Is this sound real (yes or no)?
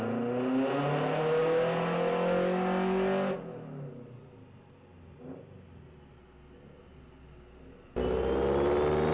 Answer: yes